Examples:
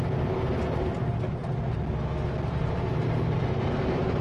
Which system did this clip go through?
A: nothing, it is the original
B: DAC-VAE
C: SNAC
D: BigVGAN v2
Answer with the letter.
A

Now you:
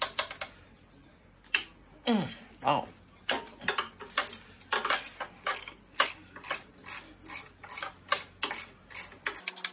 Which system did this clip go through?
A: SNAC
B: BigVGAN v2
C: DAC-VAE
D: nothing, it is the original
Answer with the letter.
D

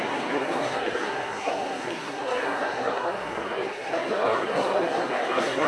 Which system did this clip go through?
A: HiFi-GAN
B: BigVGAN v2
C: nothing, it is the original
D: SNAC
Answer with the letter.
D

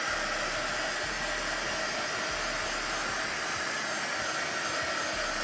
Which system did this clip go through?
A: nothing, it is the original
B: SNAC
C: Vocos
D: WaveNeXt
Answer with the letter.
A